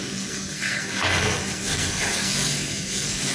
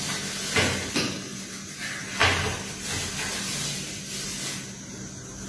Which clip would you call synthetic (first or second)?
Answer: first